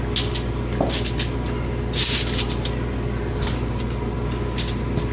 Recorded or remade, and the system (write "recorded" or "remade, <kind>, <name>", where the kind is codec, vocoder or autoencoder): recorded